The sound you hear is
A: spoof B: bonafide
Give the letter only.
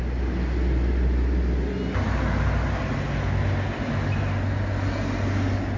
B